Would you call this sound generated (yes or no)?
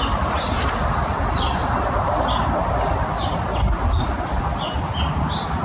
no